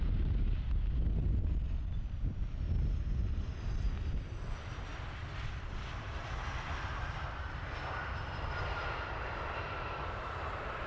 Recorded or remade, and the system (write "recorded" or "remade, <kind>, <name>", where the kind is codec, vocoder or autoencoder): recorded